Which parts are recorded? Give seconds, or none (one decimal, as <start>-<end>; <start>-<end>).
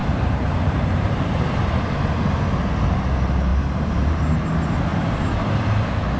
1.7-3.5; 4.5-4.9; 5.7-6.2